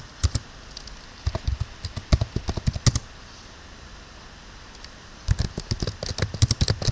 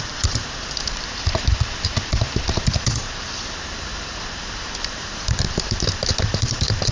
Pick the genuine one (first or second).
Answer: first